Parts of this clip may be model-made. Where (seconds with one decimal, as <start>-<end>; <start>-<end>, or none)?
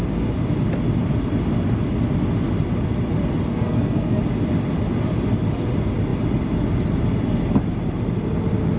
3.5-4.2